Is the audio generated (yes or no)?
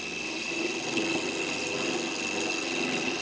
no